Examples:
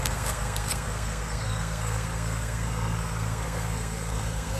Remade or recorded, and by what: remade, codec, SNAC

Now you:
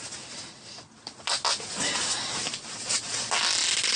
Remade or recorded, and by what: recorded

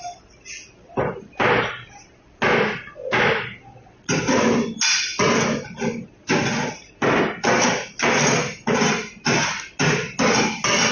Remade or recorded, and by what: recorded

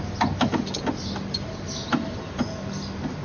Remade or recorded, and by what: recorded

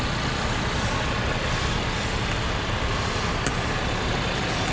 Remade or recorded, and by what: recorded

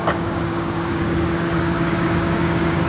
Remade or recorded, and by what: remade, codec, DAC